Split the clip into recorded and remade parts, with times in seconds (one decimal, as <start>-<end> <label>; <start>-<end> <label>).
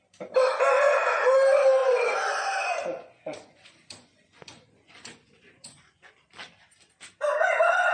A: 0.0-1.8 recorded; 1.8-6.1 remade; 6.1-7.9 recorded